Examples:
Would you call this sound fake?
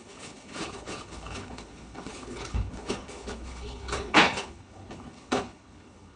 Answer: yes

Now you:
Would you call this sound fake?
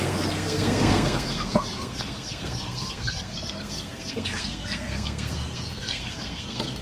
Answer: yes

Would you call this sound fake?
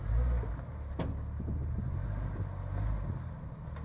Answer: no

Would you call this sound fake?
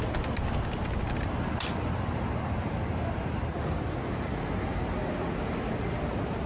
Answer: no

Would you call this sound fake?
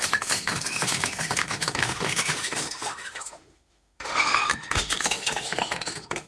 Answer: yes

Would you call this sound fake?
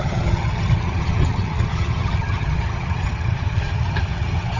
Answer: yes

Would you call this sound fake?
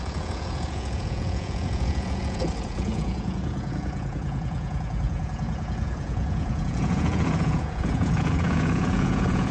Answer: yes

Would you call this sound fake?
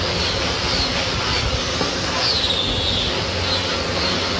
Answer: no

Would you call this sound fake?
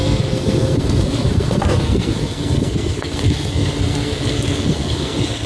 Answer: yes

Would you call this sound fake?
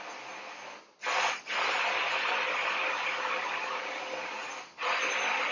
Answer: no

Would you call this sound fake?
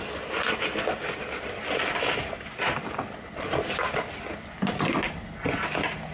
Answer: no